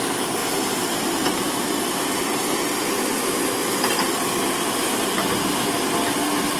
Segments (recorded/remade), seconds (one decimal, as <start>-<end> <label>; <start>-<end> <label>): 0.0-6.6 recorded